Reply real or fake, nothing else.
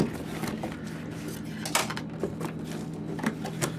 real